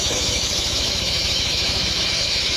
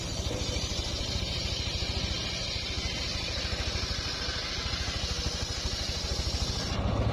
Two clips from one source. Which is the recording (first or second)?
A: second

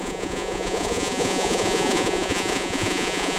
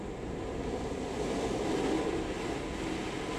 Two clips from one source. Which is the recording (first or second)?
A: second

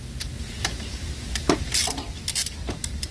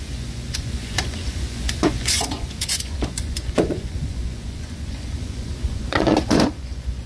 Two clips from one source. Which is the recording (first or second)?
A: first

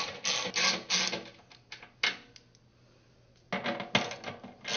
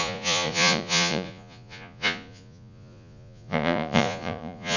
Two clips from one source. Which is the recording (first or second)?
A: first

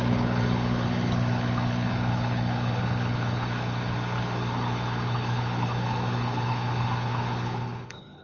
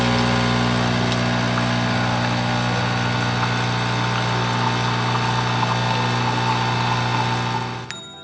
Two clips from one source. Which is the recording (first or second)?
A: second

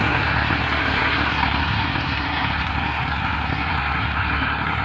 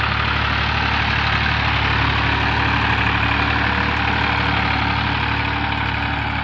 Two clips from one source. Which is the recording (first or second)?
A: second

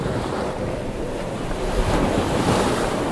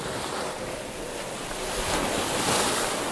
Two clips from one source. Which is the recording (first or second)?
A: second